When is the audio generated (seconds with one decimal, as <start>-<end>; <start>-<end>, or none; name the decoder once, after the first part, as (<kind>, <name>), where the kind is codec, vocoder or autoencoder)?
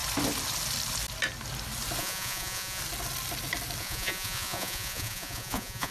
2.0-2.8 (vocoder, Vocos); 3.8-5.9